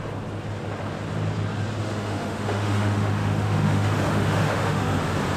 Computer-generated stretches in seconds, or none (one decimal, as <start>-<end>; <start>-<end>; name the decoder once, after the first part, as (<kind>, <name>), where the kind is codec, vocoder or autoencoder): 1.8-5.0 (autoencoder, DAC-VAE)